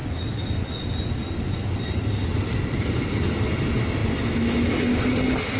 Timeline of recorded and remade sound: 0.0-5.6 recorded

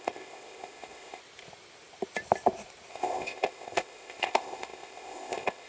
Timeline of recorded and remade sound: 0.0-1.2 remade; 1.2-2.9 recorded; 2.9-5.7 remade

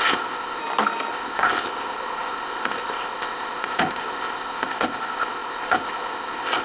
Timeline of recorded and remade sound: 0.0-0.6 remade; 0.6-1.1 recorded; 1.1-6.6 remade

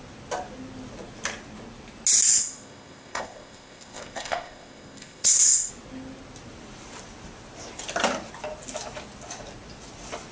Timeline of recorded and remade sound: 0.0-2.4 recorded; 2.4-5.7 remade; 5.7-10.3 recorded